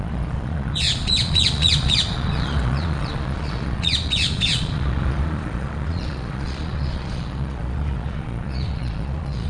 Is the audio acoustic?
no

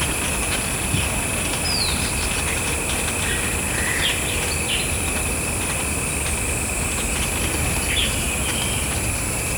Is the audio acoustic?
yes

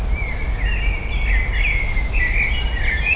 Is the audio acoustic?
yes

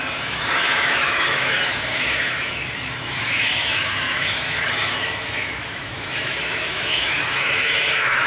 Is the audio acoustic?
no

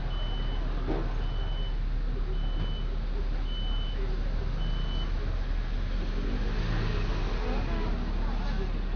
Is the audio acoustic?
yes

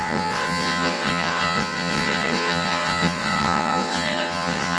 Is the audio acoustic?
no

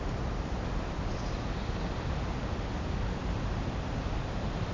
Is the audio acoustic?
yes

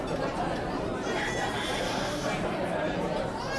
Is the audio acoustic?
no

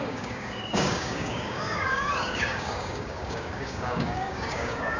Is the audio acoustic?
no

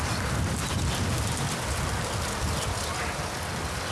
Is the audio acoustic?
yes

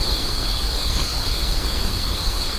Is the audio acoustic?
no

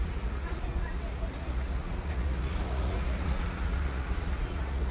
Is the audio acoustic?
no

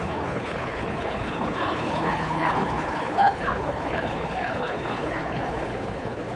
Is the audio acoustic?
no